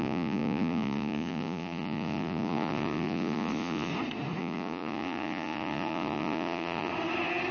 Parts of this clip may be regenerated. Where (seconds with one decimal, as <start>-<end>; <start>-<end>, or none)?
0.0-3.9; 4.4-6.9